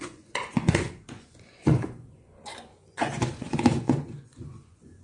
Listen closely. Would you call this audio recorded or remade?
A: remade